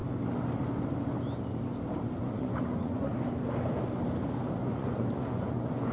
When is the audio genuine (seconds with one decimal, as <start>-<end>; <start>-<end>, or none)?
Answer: 0.0-2.2; 3.1-4.6